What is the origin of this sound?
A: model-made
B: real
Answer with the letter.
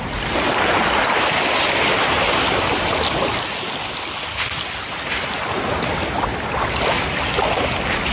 B